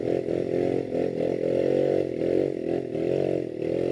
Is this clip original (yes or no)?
yes